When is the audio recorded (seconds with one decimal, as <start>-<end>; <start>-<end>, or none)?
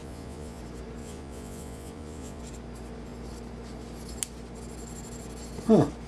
0.6-1.0; 2.4-6.1